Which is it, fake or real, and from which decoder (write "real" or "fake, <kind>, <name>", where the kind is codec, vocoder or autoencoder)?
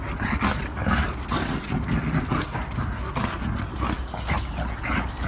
real